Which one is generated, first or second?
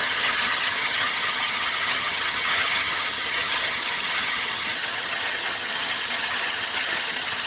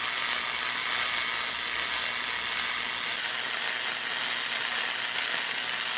first